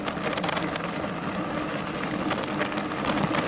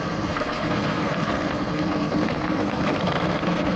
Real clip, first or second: first